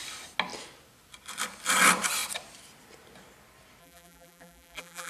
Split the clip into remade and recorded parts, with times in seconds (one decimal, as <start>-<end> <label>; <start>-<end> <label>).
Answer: 0.0-3.8 recorded; 3.8-5.1 remade